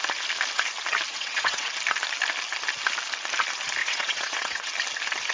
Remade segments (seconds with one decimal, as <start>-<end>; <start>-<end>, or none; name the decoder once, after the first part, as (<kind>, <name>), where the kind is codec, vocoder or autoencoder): 1.1-1.7 (vocoder, WaveNeXt); 3.8-4.7